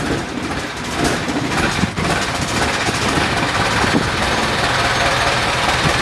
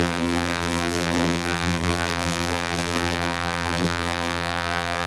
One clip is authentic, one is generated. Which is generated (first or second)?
second